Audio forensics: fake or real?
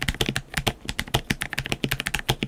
real